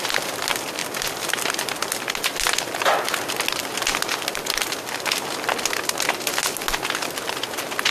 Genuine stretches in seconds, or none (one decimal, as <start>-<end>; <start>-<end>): 0.0-7.9